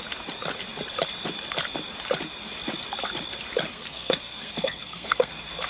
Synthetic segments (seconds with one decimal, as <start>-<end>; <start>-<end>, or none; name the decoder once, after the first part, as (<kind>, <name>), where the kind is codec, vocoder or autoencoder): 3.7-5.3 (codec, SNAC)